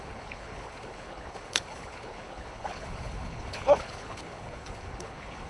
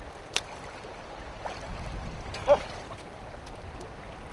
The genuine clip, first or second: second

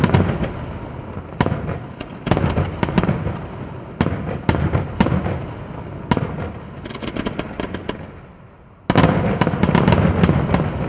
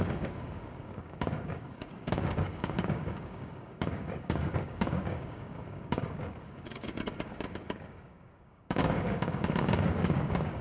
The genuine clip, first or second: first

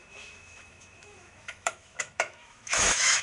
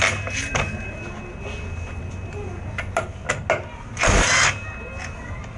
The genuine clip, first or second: second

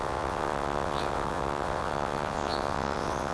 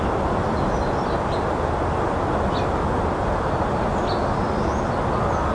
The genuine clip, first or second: second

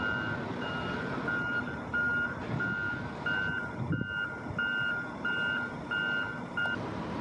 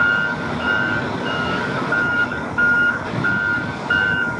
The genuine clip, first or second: first